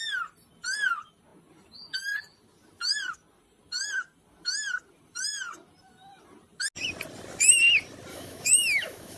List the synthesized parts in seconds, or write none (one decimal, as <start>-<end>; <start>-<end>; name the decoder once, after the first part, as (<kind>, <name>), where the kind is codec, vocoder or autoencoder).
8.1-9.2 (autoencoder, DAC-VAE)